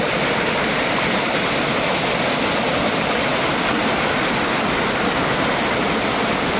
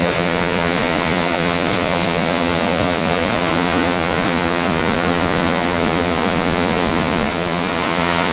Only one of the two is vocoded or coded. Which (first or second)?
second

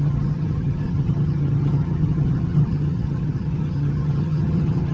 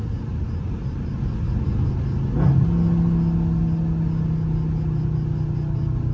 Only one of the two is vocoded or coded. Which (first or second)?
first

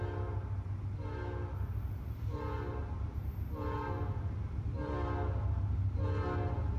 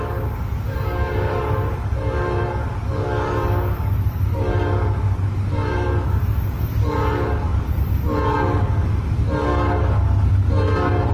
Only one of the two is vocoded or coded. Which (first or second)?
second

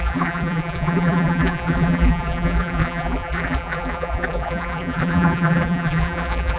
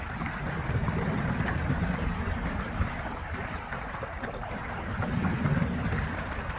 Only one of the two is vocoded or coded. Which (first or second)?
first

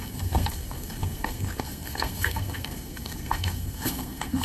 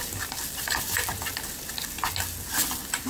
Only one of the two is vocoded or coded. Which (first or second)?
first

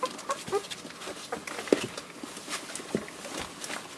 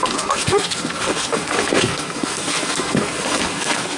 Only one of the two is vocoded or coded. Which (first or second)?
second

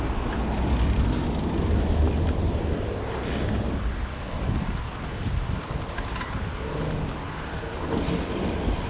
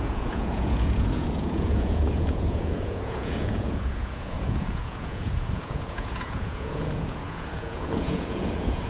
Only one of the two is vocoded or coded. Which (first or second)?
second